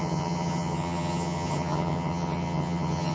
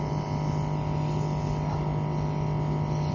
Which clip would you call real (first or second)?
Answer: second